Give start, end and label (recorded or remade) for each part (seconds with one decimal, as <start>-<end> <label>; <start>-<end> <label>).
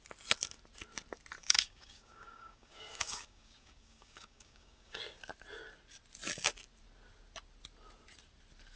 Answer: 0.0-1.4 recorded; 1.4-5.2 remade; 5.2-8.8 recorded